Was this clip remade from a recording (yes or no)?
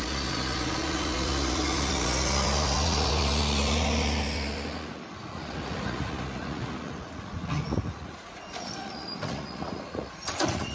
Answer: yes